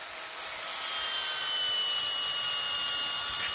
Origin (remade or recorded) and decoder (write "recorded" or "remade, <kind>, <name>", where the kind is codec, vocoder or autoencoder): recorded